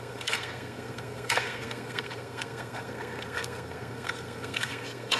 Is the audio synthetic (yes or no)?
yes